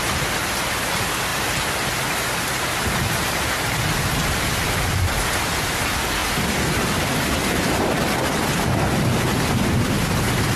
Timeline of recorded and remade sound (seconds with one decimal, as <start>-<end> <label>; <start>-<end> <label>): 0.0-10.6 recorded